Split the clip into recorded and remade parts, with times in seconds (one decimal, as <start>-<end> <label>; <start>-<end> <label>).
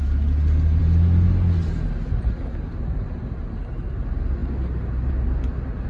0.0-5.9 recorded